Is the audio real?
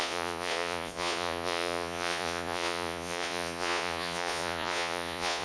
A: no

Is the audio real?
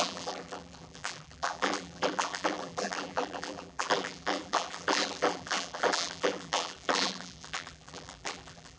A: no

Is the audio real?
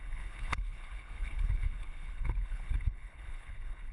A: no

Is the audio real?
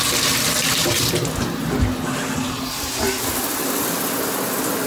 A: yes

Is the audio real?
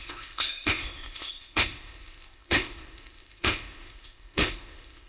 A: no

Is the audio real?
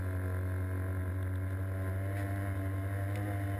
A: yes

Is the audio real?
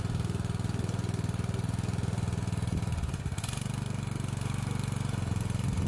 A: yes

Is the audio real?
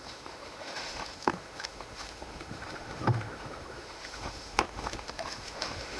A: no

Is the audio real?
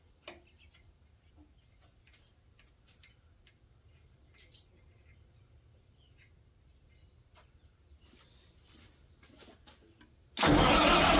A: yes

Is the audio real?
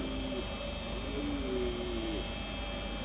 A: yes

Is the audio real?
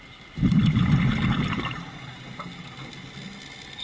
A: yes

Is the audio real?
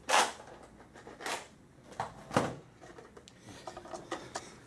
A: yes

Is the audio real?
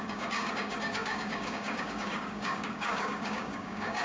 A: no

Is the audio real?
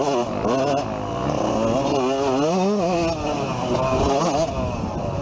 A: yes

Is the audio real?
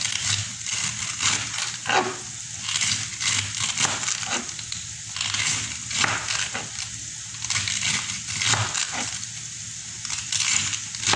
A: yes